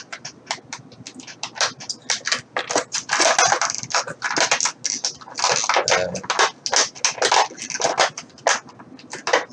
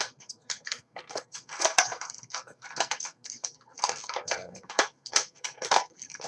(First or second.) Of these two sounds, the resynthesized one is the second